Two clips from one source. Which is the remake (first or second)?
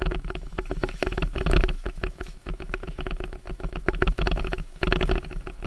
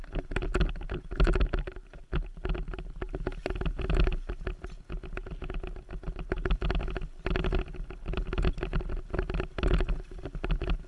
first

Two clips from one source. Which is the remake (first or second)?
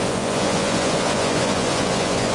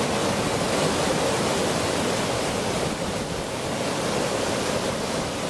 first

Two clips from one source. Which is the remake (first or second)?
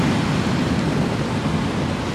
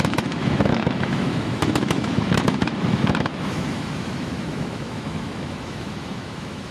second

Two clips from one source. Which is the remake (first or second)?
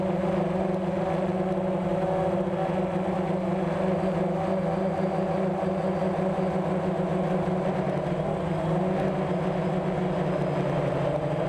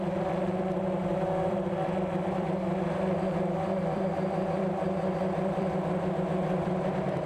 second